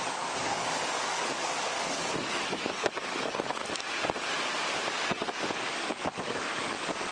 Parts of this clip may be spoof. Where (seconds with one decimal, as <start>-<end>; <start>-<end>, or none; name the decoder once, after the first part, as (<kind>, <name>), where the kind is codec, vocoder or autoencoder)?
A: 0.0-3.6 (codec, DAC); 4.9-7.1